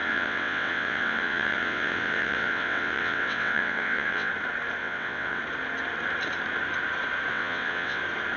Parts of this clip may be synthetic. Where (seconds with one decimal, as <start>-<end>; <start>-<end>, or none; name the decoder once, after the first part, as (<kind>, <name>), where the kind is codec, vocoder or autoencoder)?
0.0-4.3 (vocoder, WaveNeXt); 4.8-5.4; 7.3-8.0